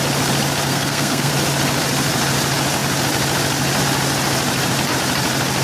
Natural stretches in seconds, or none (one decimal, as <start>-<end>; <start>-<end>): 0.0-0.7; 1.3-5.6